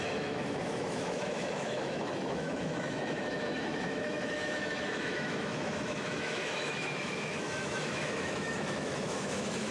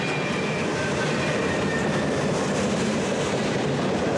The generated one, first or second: first